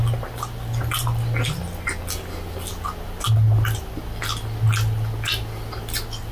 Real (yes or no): yes